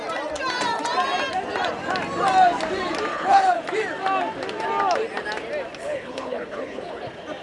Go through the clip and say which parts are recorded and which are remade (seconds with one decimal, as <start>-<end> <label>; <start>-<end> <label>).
0.0-3.1 recorded; 3.1-3.6 remade; 3.6-5.8 recorded; 5.8-7.0 remade; 7.0-7.4 recorded